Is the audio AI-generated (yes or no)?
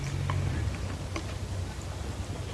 no